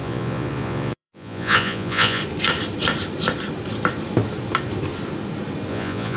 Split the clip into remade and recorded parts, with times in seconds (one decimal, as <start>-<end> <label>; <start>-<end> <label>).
0.0-2.2 remade; 2.2-5.7 recorded; 5.7-6.2 remade